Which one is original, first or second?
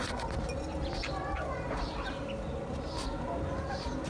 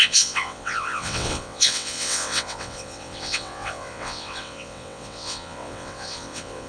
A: first